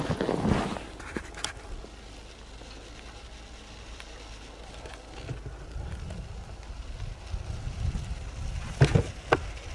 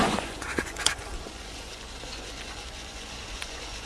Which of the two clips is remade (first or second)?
second